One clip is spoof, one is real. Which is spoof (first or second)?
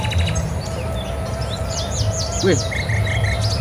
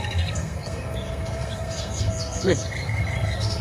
second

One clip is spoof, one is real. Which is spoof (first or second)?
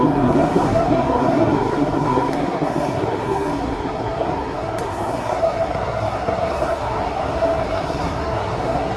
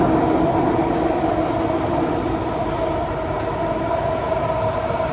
first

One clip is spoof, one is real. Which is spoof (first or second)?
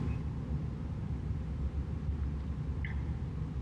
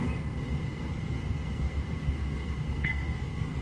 second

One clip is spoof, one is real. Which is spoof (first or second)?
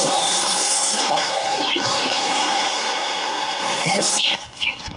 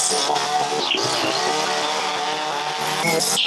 first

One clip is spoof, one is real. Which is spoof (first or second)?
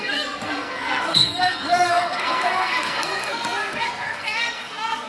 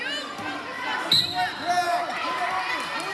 first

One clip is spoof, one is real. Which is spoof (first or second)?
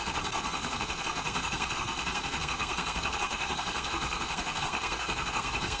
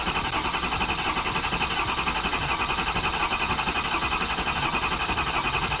first